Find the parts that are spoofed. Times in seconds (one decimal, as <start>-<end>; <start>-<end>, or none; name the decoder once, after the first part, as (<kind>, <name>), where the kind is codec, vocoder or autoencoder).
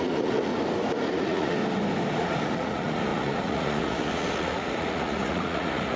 0.0-0.5 (vocoder, Vocos); 1.1-1.6; 2.2-6.0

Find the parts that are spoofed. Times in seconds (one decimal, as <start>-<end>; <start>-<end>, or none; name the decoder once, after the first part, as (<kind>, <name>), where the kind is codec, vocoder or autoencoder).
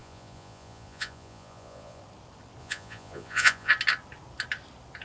0.0-2.0 (vocoder, Vocos); 2.6-3.7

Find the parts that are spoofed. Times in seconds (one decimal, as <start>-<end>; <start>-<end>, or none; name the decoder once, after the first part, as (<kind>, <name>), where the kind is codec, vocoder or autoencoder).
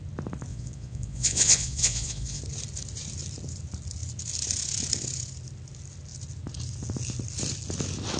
0.5-2.4 (vocoder, Vocos)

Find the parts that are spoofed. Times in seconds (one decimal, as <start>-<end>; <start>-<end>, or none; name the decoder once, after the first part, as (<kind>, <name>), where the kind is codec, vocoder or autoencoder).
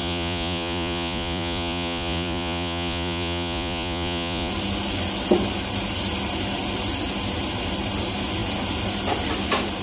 0.0-4.5 (vocoder, Vocos)